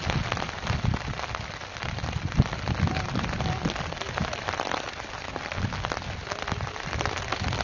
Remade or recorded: recorded